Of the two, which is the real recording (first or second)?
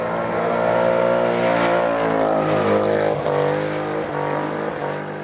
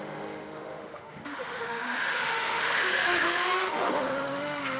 first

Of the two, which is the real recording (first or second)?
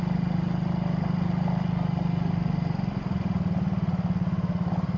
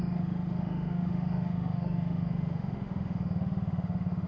first